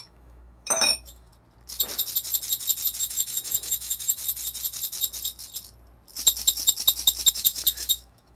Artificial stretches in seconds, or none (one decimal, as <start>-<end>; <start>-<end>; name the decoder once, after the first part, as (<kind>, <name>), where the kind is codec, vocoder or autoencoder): 0.0-1.3 (autoencoder, DAC-VAE); 3.0-4.2; 7.3-8.4